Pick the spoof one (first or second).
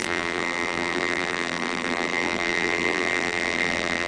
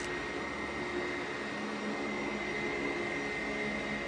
first